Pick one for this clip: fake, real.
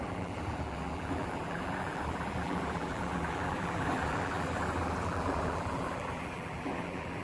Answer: fake